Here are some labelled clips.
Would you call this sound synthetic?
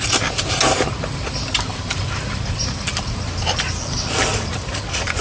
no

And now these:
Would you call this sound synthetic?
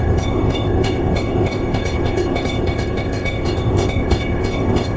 yes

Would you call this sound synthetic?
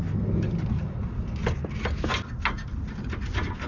no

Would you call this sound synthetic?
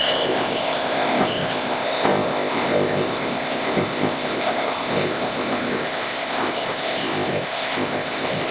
yes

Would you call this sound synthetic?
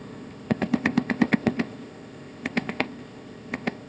yes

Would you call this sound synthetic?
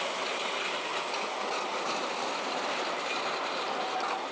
no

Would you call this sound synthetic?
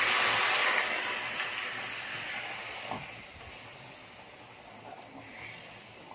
no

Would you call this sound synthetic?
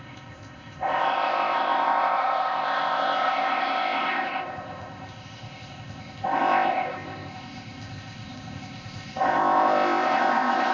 yes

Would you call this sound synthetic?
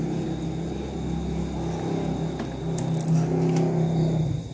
no